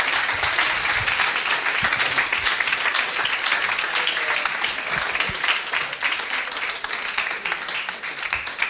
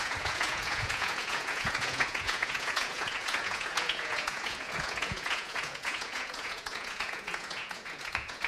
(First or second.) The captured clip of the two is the first